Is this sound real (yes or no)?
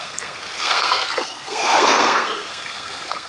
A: no